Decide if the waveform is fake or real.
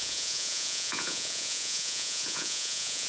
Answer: fake